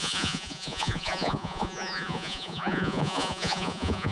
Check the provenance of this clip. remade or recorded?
remade